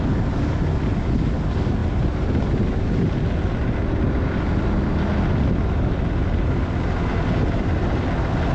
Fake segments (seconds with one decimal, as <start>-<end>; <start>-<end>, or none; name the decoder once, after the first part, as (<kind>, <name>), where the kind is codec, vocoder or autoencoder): none